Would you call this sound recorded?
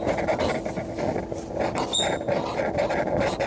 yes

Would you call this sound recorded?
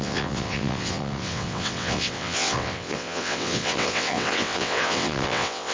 no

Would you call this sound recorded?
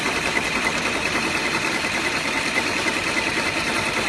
no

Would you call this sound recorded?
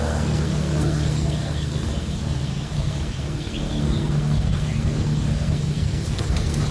no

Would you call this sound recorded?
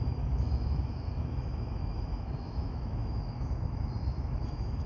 no